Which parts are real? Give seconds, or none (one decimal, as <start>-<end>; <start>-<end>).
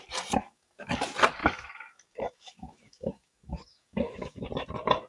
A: 0.0-0.4; 1.0-1.4; 4.5-5.1